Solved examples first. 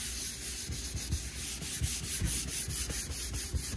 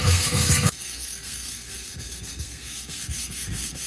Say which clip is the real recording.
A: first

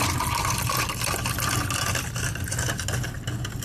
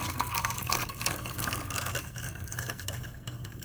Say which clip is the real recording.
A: first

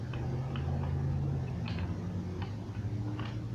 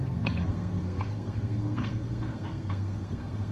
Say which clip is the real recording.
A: first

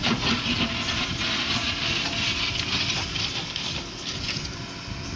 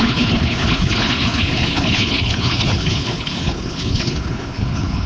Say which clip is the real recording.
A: first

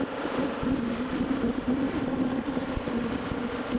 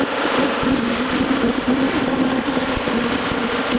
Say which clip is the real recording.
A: second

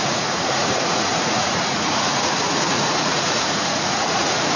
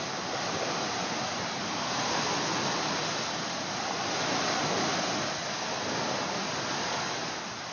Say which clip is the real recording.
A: second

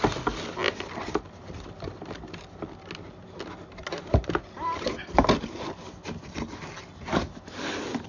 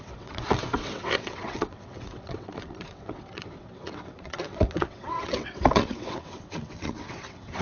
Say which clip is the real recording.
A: first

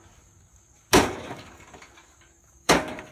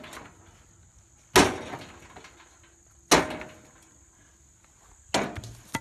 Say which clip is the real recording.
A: second